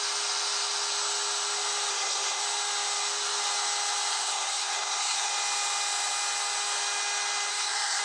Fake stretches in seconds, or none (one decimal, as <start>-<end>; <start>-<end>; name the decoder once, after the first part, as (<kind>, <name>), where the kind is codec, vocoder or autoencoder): 1.9-2.4 (codec, SNAC); 4.1-5.3; 7.5-8.0